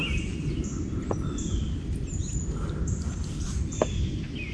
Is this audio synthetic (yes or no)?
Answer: no